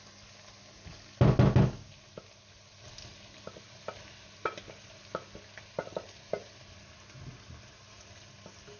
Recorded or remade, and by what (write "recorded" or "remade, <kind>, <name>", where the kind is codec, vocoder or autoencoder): recorded